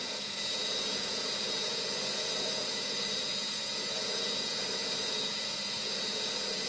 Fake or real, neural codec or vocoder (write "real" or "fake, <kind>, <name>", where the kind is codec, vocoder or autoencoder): fake, vocoder, Vocos